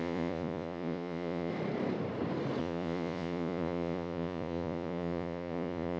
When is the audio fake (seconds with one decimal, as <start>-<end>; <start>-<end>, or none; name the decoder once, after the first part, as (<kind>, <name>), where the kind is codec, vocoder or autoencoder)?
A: 0.0-1.5 (vocoder, Vocos); 2.6-6.0